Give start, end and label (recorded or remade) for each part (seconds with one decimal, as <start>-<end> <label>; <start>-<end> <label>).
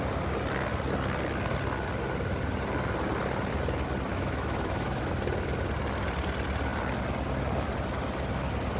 0.0-4.1 recorded; 4.1-5.1 remade; 5.1-8.8 recorded